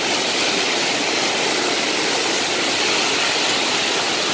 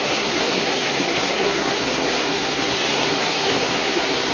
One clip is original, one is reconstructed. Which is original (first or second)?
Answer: first